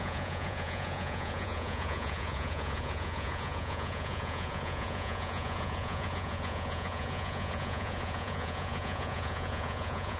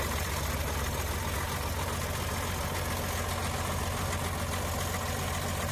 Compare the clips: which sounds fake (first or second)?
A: first